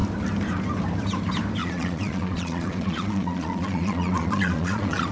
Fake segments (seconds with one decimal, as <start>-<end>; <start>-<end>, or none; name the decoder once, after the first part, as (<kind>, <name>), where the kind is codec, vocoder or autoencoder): 1.6-5.1 (vocoder, Vocos)